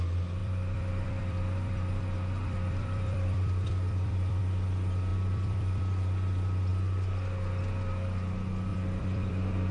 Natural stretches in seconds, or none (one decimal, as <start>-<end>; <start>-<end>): 0.0-0.4; 4.4-5.1; 5.8-8.7

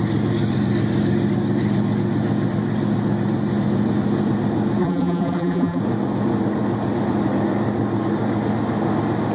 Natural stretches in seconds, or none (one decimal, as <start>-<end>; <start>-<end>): 0.0-4.8; 5.8-9.3

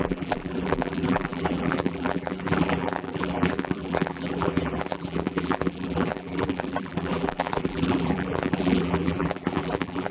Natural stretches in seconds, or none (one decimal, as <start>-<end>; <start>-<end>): none